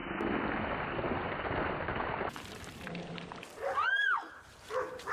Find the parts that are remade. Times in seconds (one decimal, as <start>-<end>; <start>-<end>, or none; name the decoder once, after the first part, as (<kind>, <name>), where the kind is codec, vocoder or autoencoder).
2.5-5.1 (vocoder, BigVGAN v2)